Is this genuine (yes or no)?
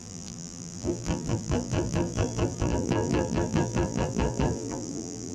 no